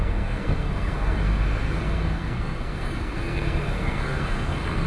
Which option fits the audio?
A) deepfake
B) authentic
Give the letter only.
A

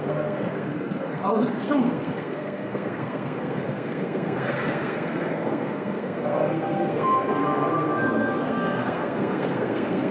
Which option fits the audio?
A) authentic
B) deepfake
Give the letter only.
B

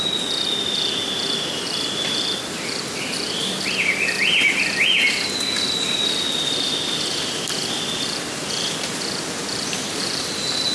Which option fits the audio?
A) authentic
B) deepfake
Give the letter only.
A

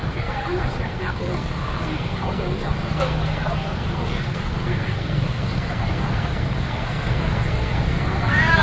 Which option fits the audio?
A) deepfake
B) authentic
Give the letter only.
A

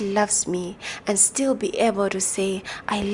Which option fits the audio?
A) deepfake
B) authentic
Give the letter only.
B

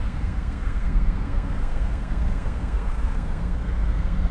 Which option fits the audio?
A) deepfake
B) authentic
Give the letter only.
A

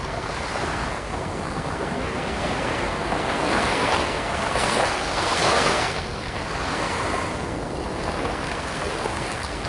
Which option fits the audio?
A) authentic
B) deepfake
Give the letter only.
B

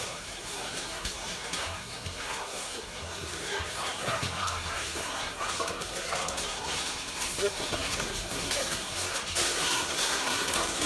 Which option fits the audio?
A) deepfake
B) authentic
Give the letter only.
A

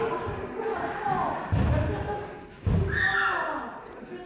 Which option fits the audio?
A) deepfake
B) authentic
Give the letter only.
B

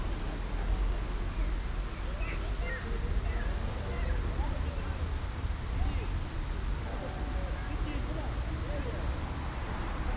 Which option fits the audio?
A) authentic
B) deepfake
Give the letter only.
A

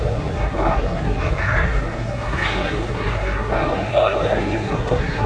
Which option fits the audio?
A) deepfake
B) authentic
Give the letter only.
A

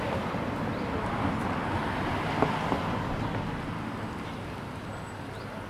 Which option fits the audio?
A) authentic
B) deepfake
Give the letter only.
A